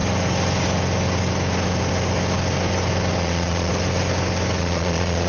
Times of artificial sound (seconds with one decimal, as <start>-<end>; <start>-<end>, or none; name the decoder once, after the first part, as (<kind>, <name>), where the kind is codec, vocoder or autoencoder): 3.2-3.7 (vocoder, Vocos); 4.6-5.3